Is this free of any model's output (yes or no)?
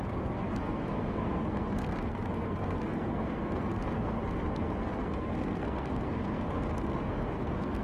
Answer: no